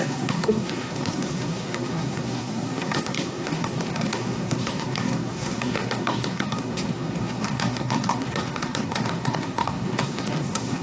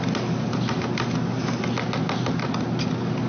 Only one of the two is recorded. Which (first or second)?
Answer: second